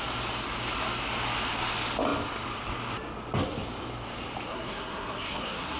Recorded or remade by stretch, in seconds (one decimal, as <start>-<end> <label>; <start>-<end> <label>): 0.0-4.5 recorded; 4.5-5.8 remade